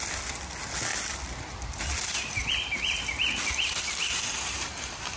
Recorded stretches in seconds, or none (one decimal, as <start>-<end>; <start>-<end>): 0.0-5.2